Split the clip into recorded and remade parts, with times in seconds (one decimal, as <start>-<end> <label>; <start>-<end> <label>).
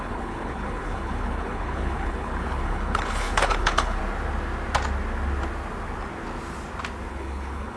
0.0-4.0 remade; 4.0-7.1 recorded; 7.1-7.8 remade